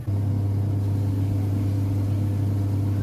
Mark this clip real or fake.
real